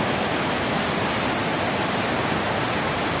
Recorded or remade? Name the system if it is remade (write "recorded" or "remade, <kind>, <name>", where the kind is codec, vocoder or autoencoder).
recorded